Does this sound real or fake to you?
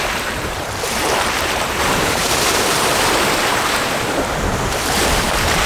fake